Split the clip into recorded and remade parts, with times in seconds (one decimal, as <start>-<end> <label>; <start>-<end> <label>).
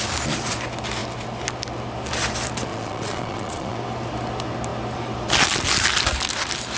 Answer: 0.0-2.7 recorded; 2.7-3.8 remade; 3.8-6.8 recorded